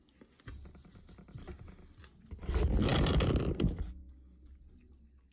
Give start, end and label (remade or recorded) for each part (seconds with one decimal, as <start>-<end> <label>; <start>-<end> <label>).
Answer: 0.0-5.3 recorded